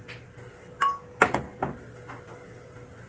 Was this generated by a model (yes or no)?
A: no